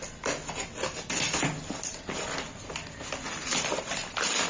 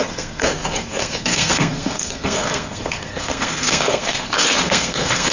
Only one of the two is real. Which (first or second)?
first